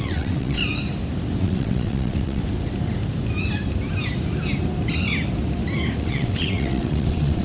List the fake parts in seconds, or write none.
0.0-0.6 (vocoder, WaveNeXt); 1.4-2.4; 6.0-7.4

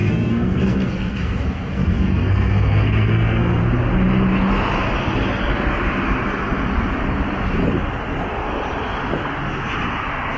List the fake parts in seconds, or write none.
0.0-3.6 (codec, SNAC)

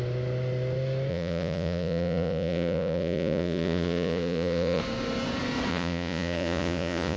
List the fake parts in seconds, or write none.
1.1-4.8 (vocoder, Vocos); 5.7-7.2

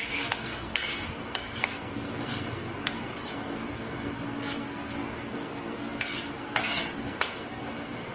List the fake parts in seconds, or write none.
0.0-8.1 (codec, SNAC)

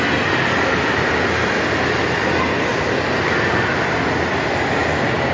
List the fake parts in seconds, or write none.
none

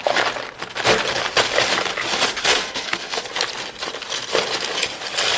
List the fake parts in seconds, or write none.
2.4-3.3 (codec, SNAC)

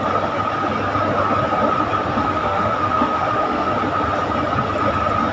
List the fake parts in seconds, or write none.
2.2-3.7 (autoencoder, DAC-VAE)